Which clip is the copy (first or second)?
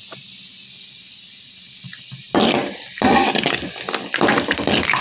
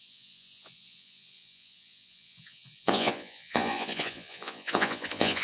second